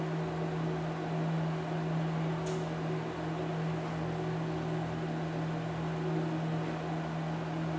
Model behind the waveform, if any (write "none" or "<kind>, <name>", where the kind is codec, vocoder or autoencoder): none